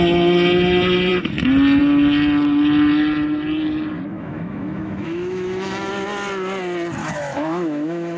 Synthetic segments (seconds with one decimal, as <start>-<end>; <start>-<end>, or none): 4.1-5.9; 7.0-8.2